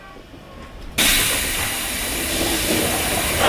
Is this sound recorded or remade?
recorded